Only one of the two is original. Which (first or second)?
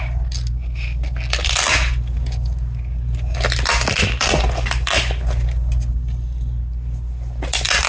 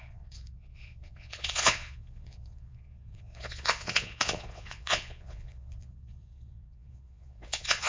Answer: first